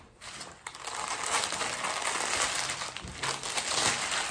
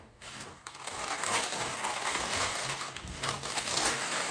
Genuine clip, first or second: first